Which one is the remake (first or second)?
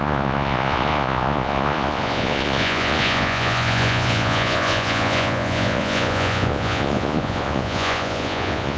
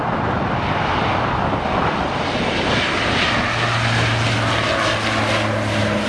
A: first